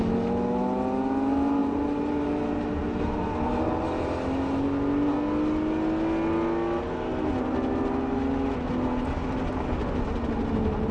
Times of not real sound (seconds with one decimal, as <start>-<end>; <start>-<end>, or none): 1.6-2.8